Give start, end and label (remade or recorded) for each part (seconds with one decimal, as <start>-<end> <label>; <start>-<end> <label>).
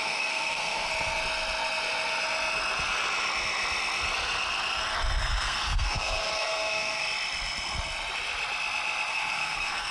0.0-0.9 remade; 0.9-5.2 recorded; 5.2-7.0 remade; 7.0-9.1 recorded; 9.1-9.9 remade